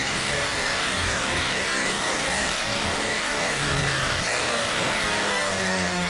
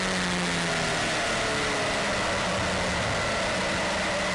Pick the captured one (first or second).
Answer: second